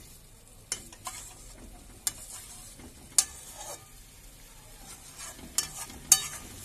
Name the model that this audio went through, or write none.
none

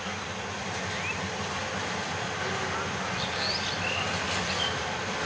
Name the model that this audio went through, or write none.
none